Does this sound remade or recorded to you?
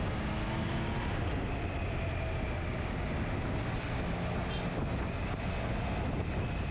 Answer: recorded